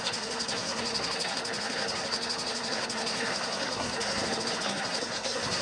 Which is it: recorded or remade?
remade